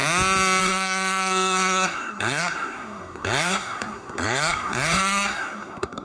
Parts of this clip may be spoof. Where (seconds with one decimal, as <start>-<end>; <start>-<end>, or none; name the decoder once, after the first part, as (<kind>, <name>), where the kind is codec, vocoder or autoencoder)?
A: 0.6-6.0 (codec, SNAC)